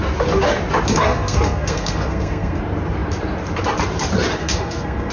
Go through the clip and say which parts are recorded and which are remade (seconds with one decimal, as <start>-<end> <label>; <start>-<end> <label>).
0.0-0.9 recorded; 0.9-2.6 remade; 2.6-4.4 recorded; 4.4-5.1 remade